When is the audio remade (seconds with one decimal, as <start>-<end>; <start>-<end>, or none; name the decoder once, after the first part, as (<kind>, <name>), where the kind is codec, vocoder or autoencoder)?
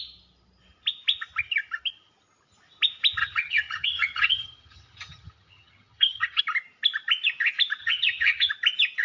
3.2-6.4 (vocoder, HiFi-GAN); 7.8-8.5